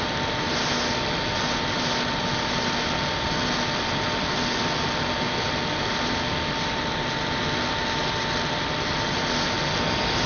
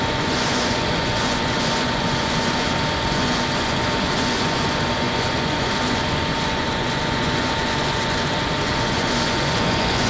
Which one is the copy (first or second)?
second